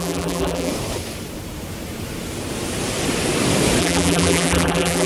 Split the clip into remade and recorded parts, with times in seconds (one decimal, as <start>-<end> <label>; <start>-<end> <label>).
0.0-0.7 remade; 0.7-3.8 recorded; 3.8-5.1 remade